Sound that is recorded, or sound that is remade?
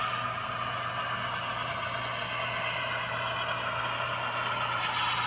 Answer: recorded